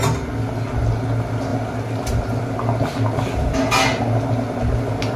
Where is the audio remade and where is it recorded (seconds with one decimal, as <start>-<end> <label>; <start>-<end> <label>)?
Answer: 0.0-5.2 recorded